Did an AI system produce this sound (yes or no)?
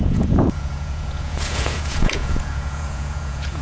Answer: yes